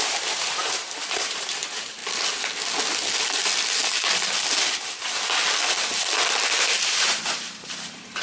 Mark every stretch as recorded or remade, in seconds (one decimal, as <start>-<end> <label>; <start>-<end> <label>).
0.0-2.0 remade; 2.0-6.8 recorded; 6.8-8.2 remade